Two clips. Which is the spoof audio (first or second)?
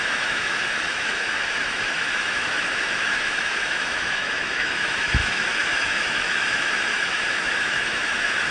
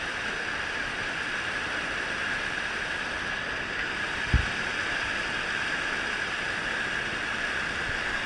first